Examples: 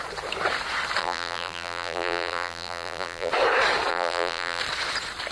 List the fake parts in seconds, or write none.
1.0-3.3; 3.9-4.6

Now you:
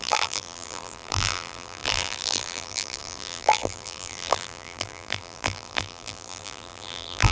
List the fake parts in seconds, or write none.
0.0-7.3

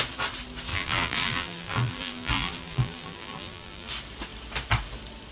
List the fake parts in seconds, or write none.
0.7-3.9